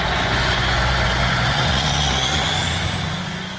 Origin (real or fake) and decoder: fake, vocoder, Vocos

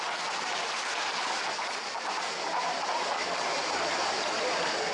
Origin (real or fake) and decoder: real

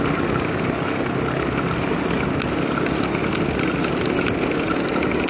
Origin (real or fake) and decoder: real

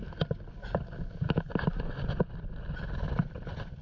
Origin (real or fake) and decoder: real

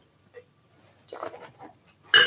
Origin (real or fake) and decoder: real